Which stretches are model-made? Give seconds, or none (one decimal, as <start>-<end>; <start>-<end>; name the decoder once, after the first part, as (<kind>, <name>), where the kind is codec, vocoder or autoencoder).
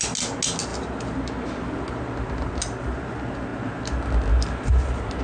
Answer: none